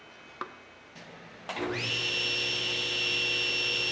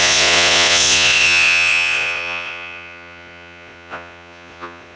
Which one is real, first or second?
first